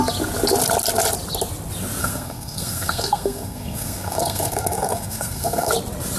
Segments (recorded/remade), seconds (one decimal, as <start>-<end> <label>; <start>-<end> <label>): 0.0-2.0 recorded; 2.0-5.7 remade; 5.7-6.2 recorded